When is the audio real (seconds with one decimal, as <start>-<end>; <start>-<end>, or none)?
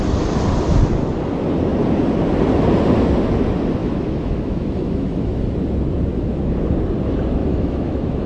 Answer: 0.0-3.8; 5.5-6.1; 6.7-7.4